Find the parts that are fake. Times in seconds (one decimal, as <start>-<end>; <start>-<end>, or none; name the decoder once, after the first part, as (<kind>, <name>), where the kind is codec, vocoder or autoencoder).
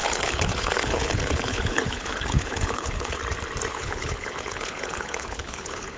0.0-3.2 (codec, HILCodec); 3.7-6.0